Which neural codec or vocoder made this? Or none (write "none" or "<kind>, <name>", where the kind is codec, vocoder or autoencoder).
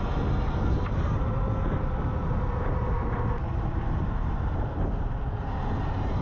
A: none